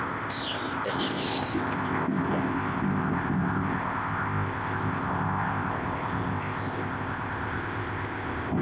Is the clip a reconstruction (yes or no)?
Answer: yes